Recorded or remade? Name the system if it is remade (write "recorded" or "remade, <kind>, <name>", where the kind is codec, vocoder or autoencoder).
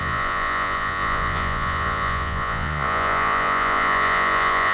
remade, vocoder, Vocos